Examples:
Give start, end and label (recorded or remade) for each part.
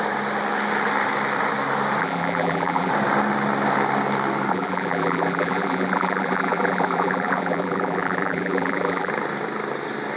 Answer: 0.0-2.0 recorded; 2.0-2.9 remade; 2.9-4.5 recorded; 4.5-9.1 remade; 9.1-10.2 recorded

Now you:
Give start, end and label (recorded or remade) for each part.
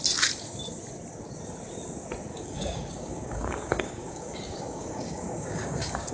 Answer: 0.0-2.3 recorded; 2.3-6.1 remade